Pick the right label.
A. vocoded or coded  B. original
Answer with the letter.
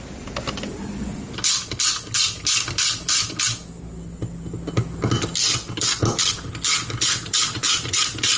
B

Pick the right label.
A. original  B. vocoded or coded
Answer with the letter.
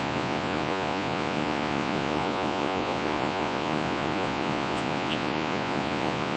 B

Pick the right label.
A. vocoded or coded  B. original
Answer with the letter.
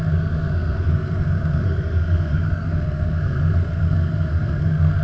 A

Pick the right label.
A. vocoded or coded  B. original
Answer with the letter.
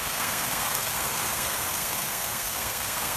A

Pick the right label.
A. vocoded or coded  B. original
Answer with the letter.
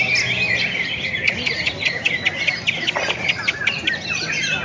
B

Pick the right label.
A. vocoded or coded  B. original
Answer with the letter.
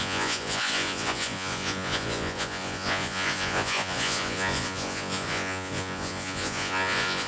A